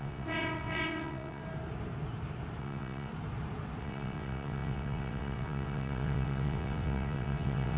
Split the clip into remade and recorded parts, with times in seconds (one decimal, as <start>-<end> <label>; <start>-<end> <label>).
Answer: 0.0-1.4 remade; 1.4-2.6 recorded; 2.6-3.1 remade; 3.1-3.8 recorded; 3.8-7.8 remade